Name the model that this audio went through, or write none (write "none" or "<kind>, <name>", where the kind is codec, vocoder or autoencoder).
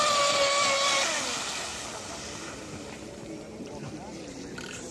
none